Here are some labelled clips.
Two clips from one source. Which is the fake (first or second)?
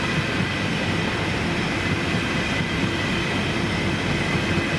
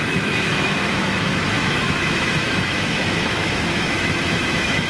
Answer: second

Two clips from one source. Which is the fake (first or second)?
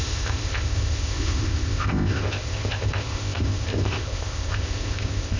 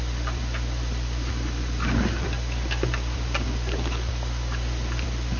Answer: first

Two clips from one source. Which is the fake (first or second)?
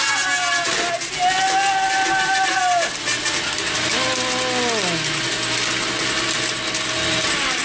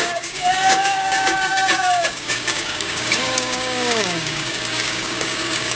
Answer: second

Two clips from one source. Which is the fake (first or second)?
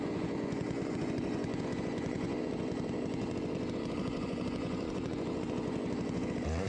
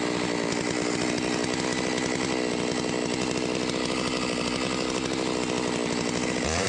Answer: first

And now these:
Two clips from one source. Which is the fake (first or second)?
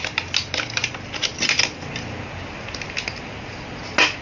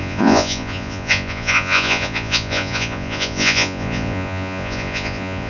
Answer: second